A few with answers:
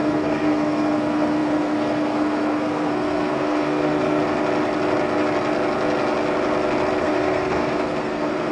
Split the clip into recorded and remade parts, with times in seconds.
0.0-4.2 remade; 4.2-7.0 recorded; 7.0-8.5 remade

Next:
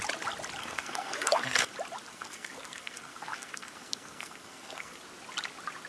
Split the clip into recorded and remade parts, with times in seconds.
0.0-0.6 recorded; 0.6-1.7 remade; 1.7-2.1 recorded; 2.1-5.0 remade; 5.0-5.9 recorded

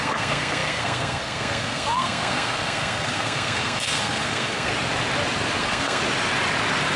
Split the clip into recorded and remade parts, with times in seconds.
0.0-4.7 remade; 4.7-5.6 recorded; 5.6-6.0 remade; 6.0-7.0 recorded

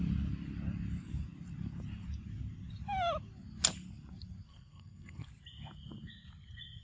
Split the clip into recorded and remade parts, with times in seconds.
0.0-4.5 recorded; 4.5-5.3 remade; 5.3-6.8 recorded